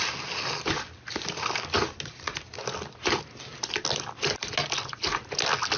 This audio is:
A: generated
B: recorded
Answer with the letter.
B